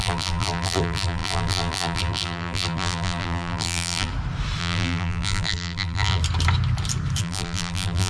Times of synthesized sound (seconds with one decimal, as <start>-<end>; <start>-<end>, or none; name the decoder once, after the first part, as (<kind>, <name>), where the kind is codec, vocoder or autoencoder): 0.0-4.1 (vocoder, BigVGAN v2); 4.6-6.2; 7.2-8.1